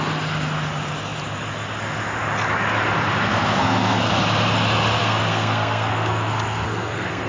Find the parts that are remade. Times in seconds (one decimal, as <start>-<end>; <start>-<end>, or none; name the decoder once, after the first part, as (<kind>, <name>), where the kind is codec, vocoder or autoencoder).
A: 3.3-4.1 (codec, SNAC); 5.0-7.3